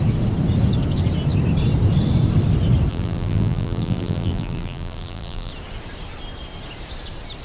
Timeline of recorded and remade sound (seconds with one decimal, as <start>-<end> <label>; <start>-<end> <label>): 0.0-2.9 recorded; 2.9-5.5 remade; 5.5-7.4 recorded